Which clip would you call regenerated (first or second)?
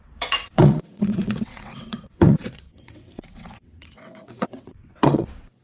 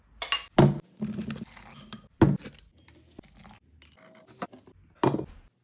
first